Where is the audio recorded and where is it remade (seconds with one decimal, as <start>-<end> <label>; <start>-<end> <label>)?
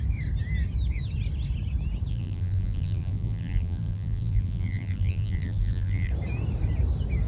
0.0-2.1 recorded; 2.1-6.1 remade; 6.1-7.3 recorded